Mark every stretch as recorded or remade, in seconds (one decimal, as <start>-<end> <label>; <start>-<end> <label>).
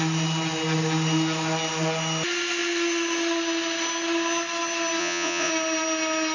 0.0-5.0 recorded; 5.0-5.5 remade; 5.5-6.3 recorded